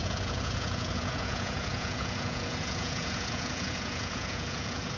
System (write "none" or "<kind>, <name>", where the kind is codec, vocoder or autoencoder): vocoder, Vocos